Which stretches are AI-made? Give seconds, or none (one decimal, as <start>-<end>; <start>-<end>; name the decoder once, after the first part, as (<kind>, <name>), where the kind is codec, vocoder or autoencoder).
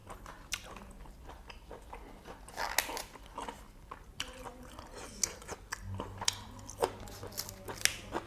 none